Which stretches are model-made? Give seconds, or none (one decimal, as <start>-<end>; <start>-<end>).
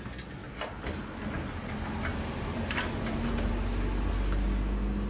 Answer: 2.1-3.5